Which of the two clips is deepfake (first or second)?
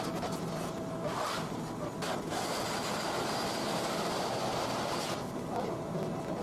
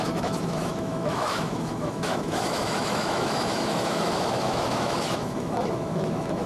second